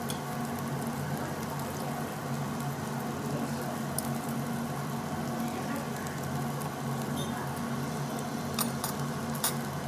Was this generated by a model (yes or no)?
no